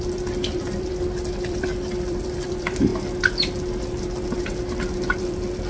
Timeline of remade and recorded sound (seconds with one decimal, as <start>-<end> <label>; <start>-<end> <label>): 0.0-2.9 remade; 2.9-4.4 recorded; 4.4-5.7 remade